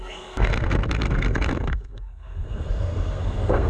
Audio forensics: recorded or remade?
remade